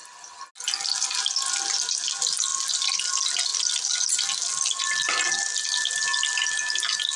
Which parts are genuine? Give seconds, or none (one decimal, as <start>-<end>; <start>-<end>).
0.0-7.2